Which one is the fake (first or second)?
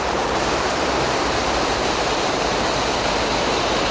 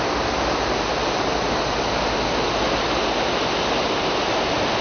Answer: first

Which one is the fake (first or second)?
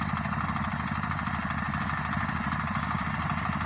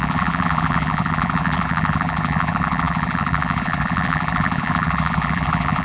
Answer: second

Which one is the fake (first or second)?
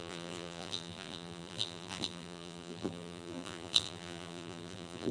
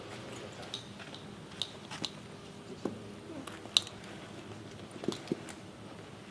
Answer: first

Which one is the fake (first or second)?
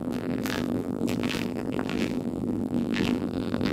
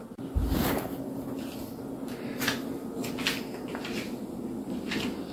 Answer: first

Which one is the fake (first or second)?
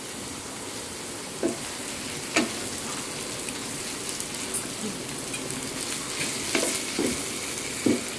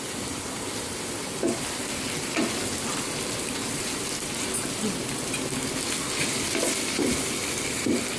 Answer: second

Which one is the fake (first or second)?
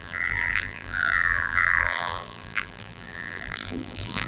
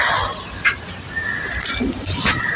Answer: first